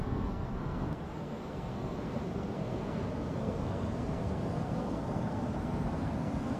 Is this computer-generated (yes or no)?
yes